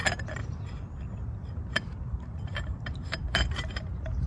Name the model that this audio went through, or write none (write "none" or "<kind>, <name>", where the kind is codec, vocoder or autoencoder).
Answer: none